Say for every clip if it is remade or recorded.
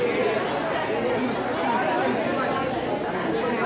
recorded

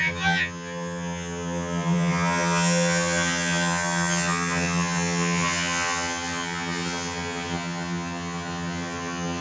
remade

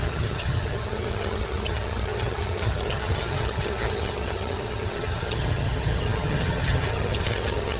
remade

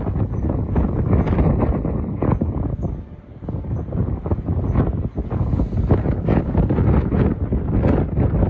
recorded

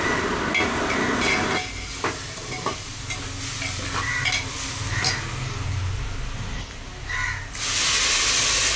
recorded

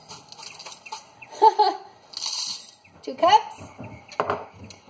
recorded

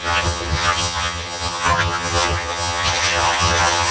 remade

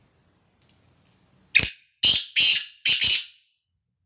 recorded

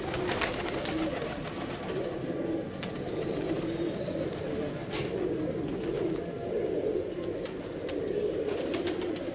recorded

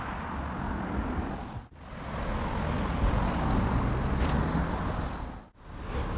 recorded